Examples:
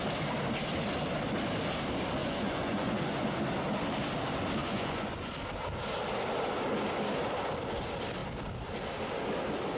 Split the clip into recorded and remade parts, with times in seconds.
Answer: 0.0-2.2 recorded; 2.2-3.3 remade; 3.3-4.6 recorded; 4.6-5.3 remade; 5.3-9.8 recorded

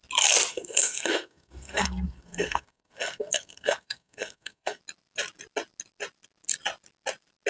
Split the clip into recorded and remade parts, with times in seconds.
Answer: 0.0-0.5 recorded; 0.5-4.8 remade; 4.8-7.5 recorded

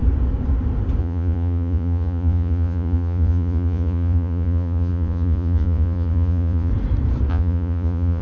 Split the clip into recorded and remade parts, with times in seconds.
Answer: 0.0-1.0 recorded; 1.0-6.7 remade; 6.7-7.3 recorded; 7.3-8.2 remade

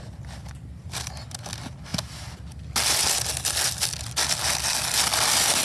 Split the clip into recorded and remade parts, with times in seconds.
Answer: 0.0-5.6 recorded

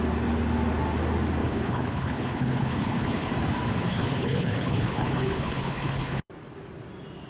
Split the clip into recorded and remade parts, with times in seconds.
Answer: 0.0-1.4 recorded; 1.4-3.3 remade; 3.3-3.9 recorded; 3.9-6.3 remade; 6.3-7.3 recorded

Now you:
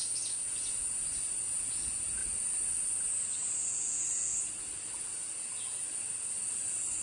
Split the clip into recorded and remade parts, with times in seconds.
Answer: 0.0-2.2 remade; 2.2-3.6 recorded; 3.6-4.3 remade; 4.3-7.0 recorded